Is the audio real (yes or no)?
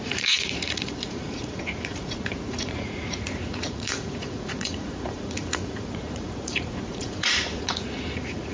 no